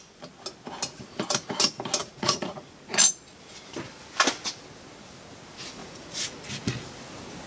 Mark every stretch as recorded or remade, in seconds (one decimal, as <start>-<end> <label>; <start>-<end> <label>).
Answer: 0.0-2.0 recorded; 2.0-2.9 remade; 2.9-5.8 recorded; 5.8-6.8 remade; 6.8-7.5 recorded